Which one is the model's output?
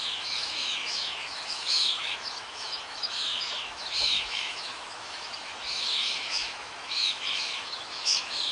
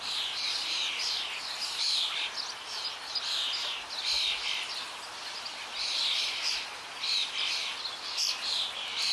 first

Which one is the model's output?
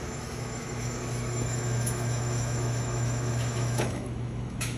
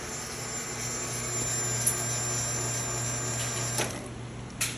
first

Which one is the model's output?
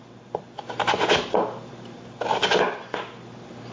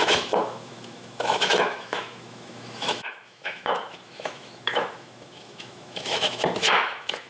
second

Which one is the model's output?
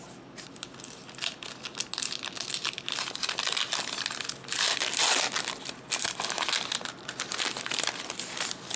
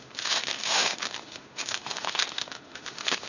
second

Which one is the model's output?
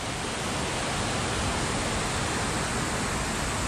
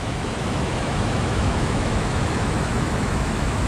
second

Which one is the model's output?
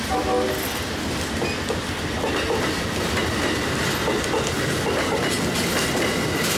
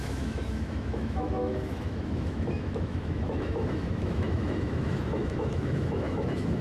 second